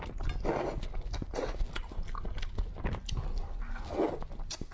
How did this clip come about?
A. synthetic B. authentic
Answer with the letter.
B